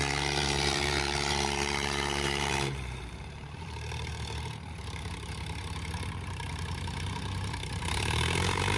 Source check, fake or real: fake